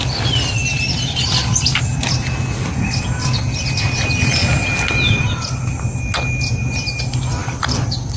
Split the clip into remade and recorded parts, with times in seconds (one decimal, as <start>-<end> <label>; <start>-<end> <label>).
0.0-0.6 recorded; 0.6-2.0 remade; 2.0-7.4 recorded; 7.4-8.2 remade